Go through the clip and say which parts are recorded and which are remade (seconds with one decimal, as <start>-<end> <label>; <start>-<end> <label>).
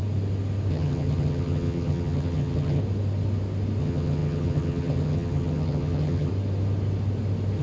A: 0.0-0.7 recorded; 0.7-2.8 remade; 2.8-3.8 recorded; 3.8-6.3 remade; 6.3-7.6 recorded